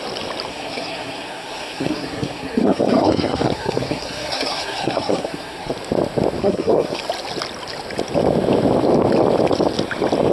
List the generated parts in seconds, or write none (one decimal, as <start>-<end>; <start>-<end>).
0.5-5.7; 6.4-7.0